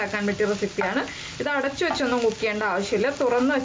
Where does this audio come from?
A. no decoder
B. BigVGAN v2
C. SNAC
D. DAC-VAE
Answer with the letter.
A